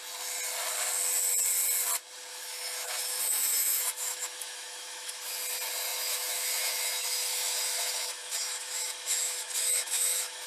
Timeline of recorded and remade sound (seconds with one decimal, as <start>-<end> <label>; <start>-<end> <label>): 0.0-2.3 recorded; 2.3-5.3 remade; 5.3-5.9 recorded; 5.9-10.5 remade